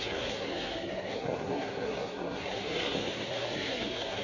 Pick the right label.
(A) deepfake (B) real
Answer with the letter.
A